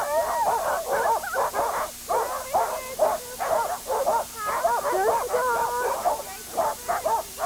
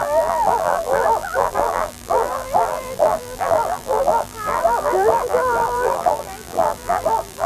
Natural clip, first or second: first